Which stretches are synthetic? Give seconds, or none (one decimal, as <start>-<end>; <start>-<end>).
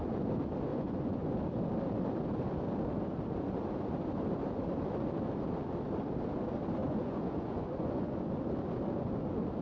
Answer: 0.7-1.3; 6.8-8.3